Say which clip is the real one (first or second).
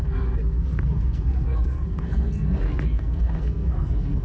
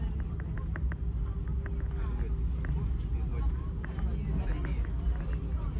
second